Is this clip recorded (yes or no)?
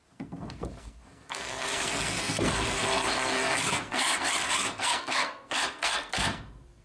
no